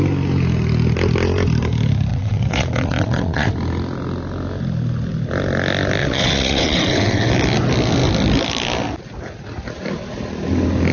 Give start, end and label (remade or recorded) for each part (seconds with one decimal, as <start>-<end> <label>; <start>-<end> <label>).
0.0-2.1 recorded; 2.1-3.5 remade; 3.5-6.0 recorded; 6.0-7.3 remade; 7.3-10.9 recorded